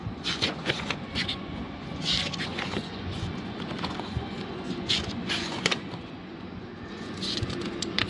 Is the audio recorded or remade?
remade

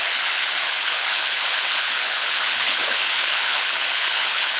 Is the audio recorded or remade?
remade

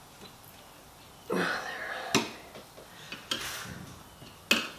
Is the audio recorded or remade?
recorded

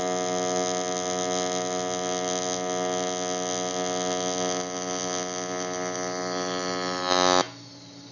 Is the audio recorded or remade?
recorded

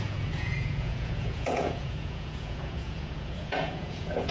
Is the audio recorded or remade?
remade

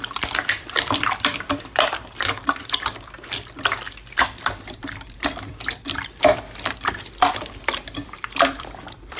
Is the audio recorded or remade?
remade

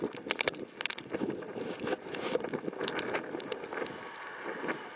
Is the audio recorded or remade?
recorded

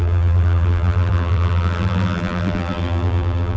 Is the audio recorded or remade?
remade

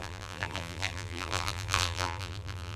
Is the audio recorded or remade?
remade